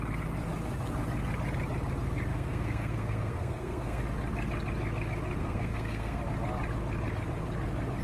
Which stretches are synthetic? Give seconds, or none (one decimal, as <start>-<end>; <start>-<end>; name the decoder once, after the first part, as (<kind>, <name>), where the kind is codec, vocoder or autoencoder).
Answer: 2.3-4.0 (codec, SNAC); 5.4-6.2